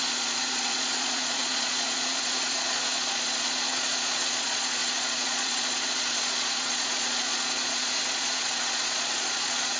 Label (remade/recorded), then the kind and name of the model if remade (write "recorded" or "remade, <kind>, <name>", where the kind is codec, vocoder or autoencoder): remade, vocoder, Vocos